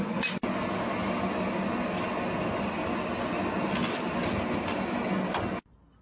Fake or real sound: real